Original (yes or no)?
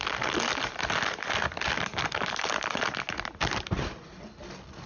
yes